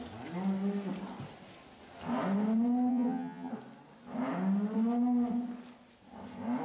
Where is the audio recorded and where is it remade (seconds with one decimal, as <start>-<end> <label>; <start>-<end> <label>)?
0.0-2.9 recorded; 2.9-3.5 remade; 3.5-6.6 recorded